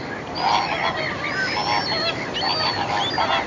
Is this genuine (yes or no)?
yes